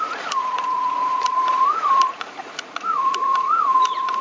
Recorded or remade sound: remade